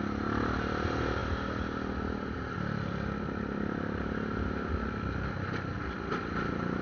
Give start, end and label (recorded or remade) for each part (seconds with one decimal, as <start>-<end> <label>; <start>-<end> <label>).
0.0-6.8 recorded